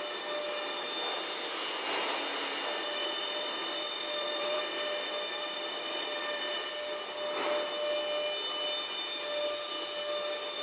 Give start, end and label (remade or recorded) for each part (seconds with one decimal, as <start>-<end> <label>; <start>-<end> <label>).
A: 0.0-3.0 recorded; 3.0-4.6 remade; 4.6-6.0 recorded; 6.0-6.7 remade; 6.7-10.6 recorded